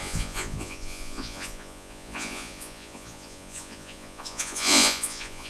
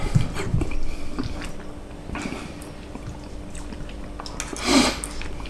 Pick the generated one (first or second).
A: first